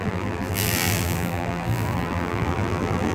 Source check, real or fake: fake